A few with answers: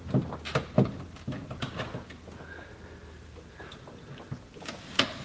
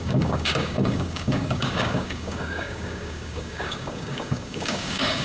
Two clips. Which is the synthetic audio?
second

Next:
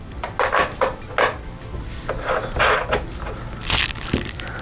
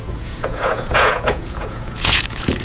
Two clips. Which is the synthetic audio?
second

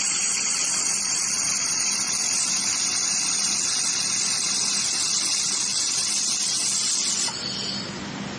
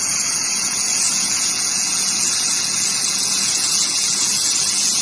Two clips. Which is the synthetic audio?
second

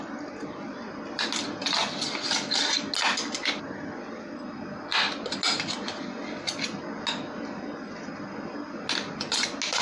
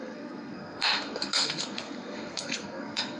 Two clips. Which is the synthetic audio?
second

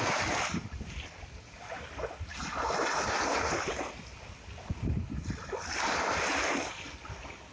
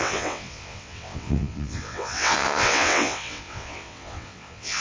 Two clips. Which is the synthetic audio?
second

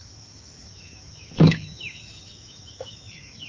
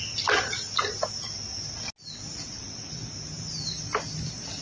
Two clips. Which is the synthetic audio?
first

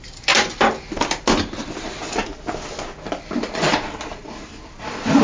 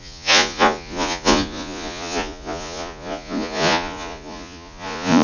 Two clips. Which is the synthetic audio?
second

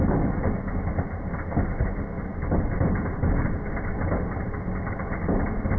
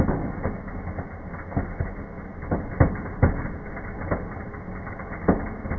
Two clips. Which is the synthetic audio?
first